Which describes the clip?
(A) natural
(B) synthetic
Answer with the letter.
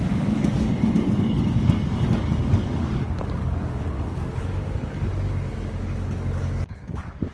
B